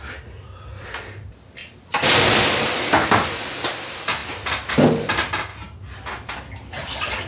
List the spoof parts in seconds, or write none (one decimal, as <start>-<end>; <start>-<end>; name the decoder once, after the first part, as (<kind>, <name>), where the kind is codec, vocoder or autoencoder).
none